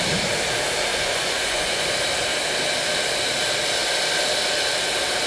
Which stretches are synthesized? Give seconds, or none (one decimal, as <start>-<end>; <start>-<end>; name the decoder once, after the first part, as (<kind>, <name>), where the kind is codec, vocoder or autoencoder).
0.9-1.9 (vocoder, Vocos)